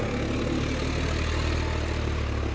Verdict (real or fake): real